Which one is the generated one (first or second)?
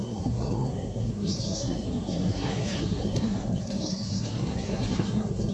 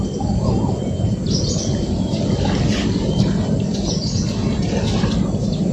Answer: first